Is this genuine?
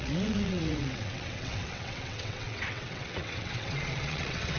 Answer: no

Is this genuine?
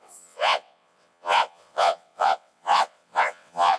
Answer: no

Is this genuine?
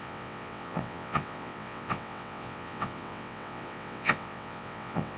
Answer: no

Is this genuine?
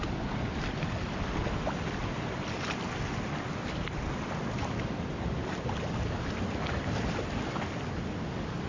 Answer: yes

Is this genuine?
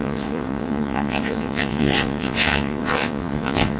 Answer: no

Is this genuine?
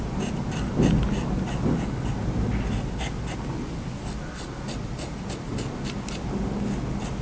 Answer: yes